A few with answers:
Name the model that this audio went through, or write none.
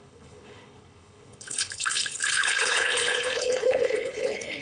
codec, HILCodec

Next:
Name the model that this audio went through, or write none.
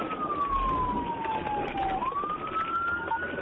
none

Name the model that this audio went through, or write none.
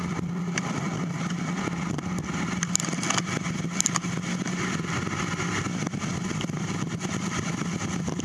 none